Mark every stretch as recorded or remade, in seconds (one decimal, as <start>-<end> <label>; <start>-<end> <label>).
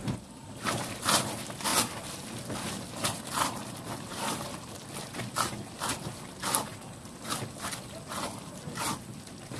0.0-9.6 recorded